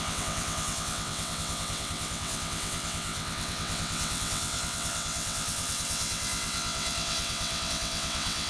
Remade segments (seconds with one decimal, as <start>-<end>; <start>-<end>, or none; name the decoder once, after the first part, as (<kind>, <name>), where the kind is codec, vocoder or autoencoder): 0.0-8.5 (vocoder, WaveNeXt)